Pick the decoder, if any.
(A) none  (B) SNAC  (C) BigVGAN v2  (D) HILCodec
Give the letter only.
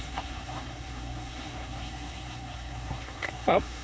B